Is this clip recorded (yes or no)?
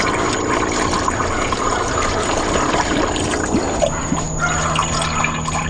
yes